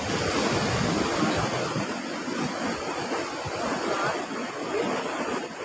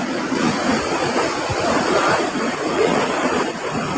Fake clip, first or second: second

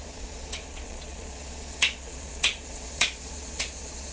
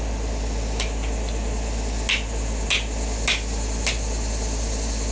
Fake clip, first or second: first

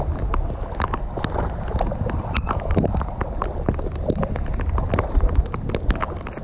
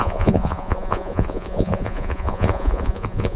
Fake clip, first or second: second